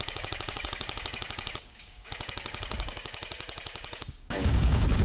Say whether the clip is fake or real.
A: fake